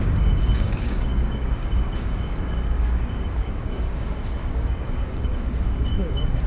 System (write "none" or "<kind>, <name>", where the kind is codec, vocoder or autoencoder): codec, DAC